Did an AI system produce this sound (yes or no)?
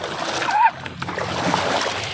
no